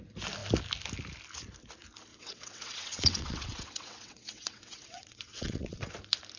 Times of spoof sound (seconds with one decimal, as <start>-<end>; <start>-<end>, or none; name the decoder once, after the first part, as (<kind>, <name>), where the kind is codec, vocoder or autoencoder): 2.1-5.9 (vocoder, WaveNeXt)